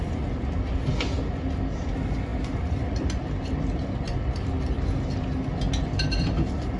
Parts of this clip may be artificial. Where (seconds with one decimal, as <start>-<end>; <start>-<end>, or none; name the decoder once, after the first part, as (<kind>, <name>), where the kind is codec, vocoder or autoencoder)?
none